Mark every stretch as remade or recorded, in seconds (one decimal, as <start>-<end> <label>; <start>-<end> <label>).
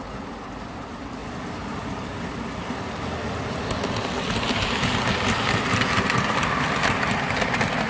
0.0-7.9 recorded